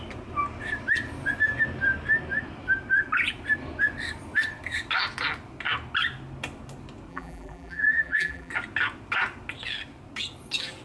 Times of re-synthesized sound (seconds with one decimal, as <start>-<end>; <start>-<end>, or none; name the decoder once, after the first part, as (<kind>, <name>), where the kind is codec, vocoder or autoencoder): 7.1-8.5 (vocoder, BigVGAN v2)